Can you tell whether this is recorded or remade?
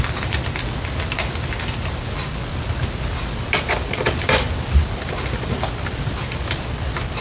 recorded